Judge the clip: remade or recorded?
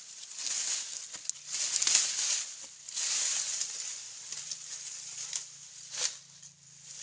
recorded